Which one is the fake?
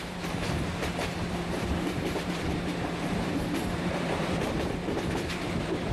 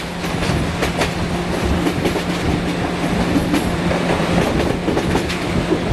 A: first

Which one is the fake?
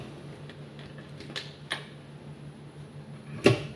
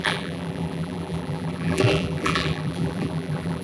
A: second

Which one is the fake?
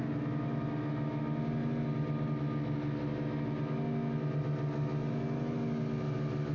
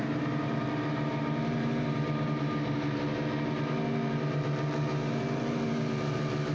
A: second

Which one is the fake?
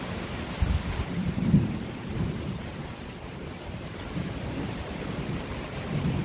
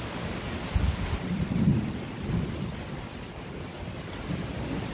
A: first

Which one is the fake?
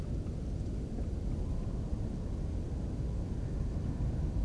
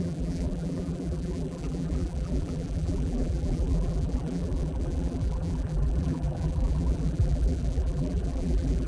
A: second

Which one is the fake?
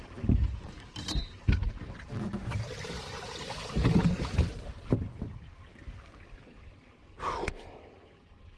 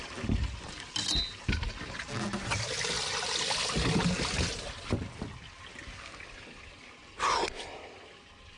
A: first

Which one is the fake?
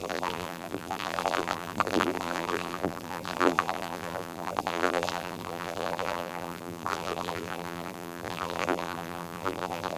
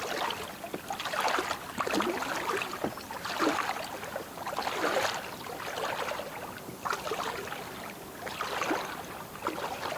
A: first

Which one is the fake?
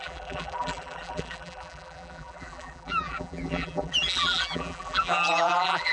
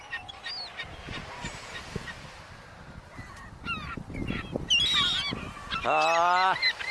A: first